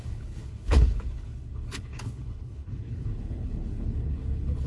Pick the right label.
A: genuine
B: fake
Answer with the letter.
B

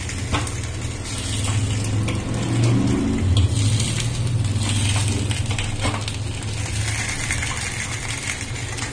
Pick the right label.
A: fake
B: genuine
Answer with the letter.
B